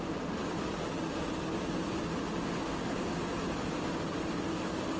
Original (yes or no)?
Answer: yes